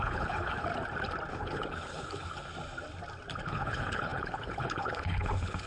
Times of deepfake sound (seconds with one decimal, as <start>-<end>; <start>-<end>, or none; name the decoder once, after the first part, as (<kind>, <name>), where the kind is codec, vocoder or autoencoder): 0.0-0.7 (codec, HILCodec); 1.3-2.5; 3.4-5.7